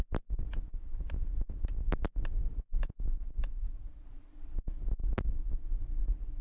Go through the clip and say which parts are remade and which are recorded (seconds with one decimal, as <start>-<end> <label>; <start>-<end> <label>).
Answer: 0.0-6.4 recorded